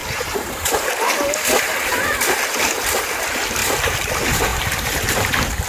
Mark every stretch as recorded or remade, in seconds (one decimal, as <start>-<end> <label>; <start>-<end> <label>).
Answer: 0.0-0.9 remade; 0.9-3.6 recorded; 3.6-4.1 remade; 4.1-4.5 recorded; 4.5-5.3 remade; 5.3-5.7 recorded